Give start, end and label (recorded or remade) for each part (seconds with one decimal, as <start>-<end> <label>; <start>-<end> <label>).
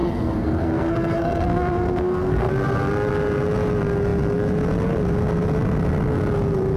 0.0-2.5 remade; 2.5-6.8 recorded